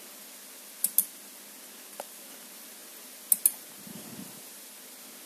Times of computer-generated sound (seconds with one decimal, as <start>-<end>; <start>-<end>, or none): none